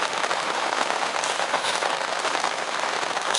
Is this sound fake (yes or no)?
yes